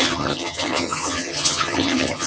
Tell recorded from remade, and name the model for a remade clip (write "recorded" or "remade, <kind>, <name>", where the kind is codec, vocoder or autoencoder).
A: remade, vocoder, HiFi-GAN